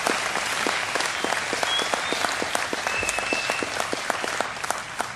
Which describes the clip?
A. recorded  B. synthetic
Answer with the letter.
A